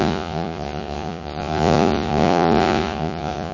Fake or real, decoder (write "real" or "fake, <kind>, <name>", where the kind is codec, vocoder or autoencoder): fake, vocoder, Vocos